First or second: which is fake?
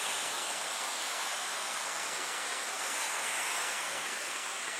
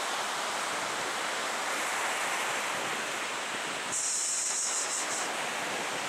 first